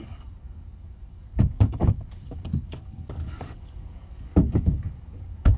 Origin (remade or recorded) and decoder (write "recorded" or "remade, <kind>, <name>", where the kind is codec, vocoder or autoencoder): remade, codec, DAC